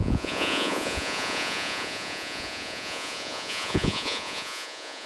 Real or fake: fake